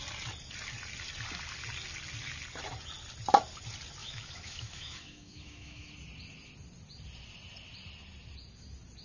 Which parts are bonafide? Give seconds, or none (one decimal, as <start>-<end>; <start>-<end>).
0.0-4.0; 5.9-9.0